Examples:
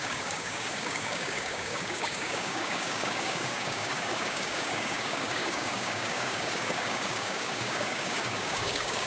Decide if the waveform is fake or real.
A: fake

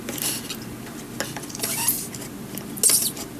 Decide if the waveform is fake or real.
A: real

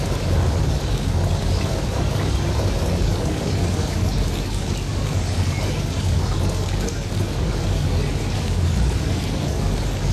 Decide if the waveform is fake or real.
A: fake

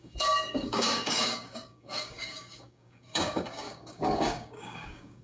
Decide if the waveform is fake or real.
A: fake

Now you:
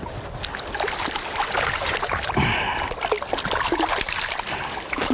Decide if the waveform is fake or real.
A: real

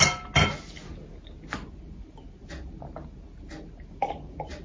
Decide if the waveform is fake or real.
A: real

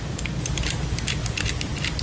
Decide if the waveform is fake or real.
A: real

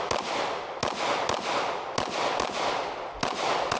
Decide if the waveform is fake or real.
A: real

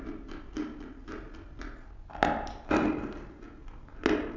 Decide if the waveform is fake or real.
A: real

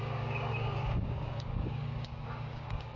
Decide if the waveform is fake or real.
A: fake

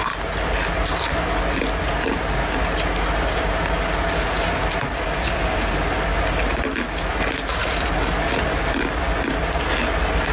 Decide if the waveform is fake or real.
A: real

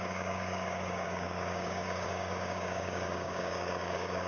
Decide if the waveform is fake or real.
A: fake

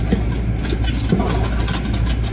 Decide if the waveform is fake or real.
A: real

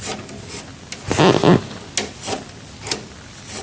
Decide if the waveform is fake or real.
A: real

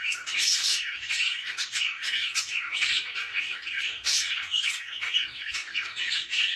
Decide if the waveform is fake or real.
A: fake